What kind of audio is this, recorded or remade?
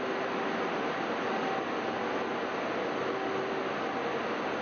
recorded